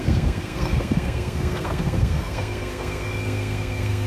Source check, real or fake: fake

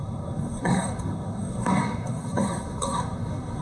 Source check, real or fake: fake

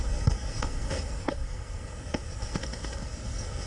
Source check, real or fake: fake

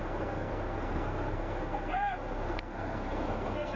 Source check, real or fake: fake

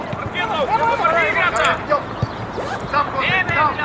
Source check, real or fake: real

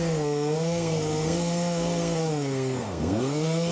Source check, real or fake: fake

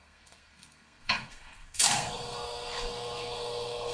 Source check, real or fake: fake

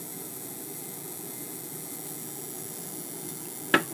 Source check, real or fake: real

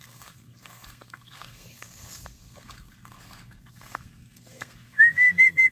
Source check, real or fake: fake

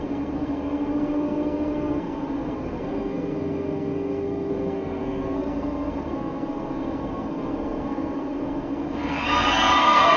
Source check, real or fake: fake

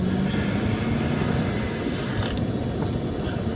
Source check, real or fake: real